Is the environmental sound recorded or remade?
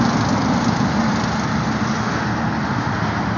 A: recorded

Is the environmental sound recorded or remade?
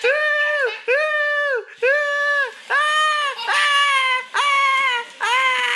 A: recorded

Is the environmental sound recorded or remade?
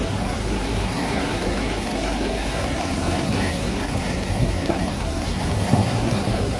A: remade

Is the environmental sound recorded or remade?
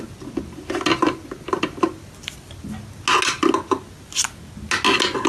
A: recorded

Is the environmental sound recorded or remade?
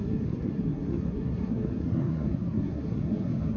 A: remade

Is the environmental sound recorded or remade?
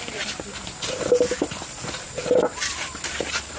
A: recorded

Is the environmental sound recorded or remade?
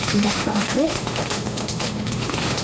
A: remade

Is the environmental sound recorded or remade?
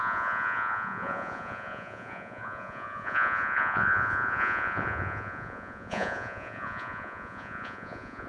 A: remade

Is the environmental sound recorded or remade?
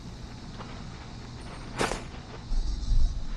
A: remade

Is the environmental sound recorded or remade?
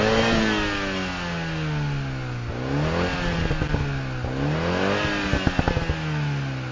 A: recorded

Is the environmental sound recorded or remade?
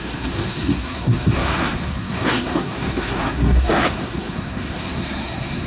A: remade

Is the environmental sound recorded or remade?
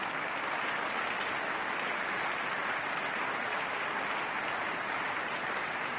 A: recorded